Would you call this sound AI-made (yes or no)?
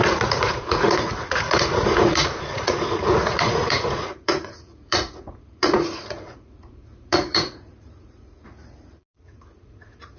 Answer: yes